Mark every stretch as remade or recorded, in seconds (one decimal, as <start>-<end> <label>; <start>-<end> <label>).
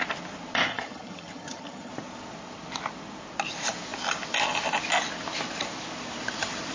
0.0-0.7 recorded; 0.7-1.9 remade; 1.9-6.7 recorded